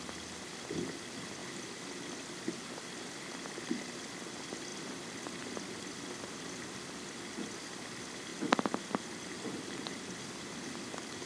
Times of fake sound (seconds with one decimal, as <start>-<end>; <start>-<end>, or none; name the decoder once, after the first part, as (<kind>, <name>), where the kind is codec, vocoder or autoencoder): none